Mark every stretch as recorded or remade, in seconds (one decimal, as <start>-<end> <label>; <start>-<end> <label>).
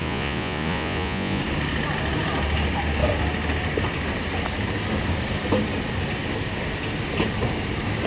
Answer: 0.0-1.4 remade; 1.4-8.1 recorded